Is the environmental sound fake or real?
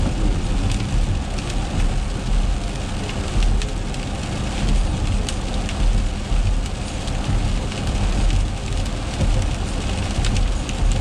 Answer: real